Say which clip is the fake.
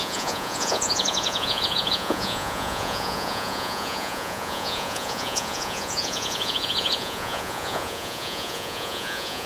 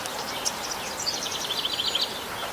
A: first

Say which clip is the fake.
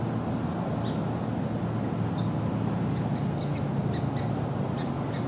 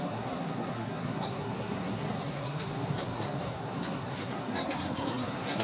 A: second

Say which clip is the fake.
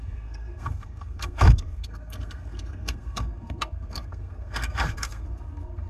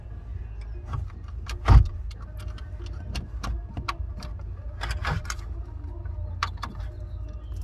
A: first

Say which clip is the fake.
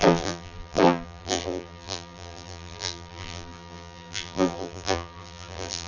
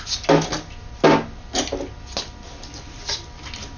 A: first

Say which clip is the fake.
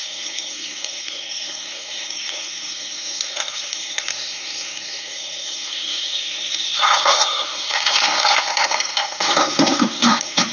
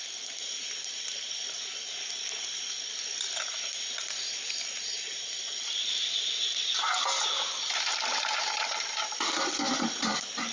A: first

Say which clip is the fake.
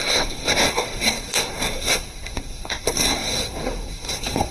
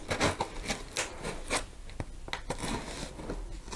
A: first